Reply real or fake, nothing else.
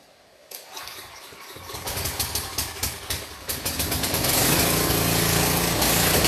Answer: fake